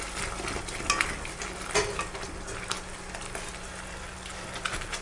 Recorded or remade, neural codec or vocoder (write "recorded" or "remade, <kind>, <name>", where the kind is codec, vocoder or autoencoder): recorded